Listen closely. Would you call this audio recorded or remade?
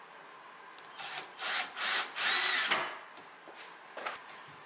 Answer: recorded